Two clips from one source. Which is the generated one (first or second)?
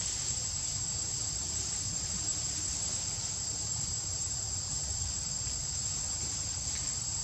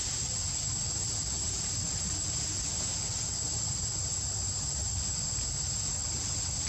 first